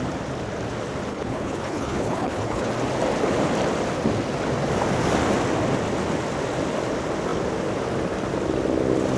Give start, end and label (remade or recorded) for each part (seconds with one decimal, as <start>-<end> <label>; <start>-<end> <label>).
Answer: 0.0-1.1 recorded; 1.1-2.7 remade; 2.7-9.2 recorded